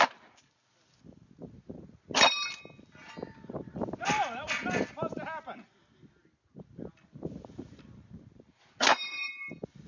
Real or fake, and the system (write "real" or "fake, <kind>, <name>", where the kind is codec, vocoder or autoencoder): real